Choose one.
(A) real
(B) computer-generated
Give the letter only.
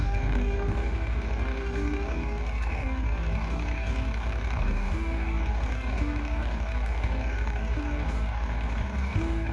B